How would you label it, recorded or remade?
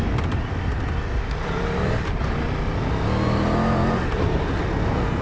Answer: recorded